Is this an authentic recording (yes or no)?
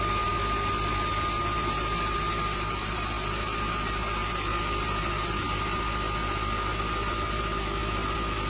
yes